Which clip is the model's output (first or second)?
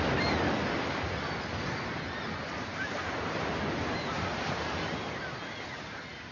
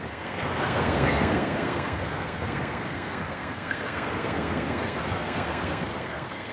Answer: second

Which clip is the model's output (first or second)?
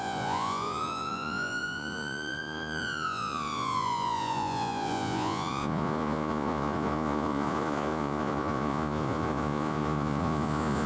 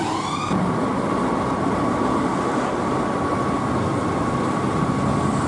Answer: first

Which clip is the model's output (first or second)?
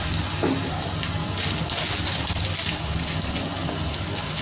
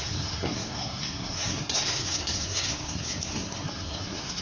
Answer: second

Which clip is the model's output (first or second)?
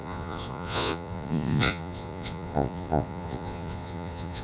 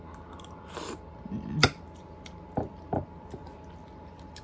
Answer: first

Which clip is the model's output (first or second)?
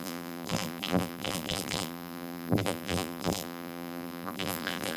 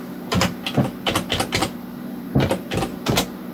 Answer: first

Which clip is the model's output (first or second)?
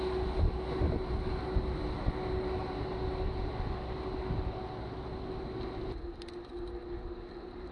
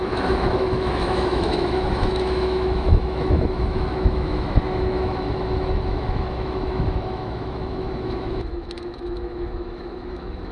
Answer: second